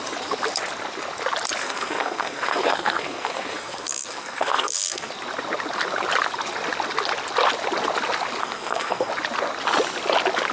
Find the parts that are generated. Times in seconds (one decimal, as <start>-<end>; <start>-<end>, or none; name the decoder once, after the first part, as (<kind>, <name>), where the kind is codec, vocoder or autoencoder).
1.6-5.1 (codec, SNAC); 8.4-9.1